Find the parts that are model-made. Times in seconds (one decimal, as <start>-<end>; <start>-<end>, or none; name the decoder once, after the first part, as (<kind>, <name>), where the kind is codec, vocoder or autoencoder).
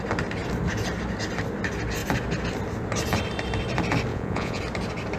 4.1-4.6 (vocoder, Vocos)